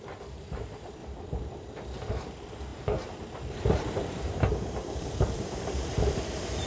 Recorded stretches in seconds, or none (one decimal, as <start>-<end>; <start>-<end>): 1.0-2.1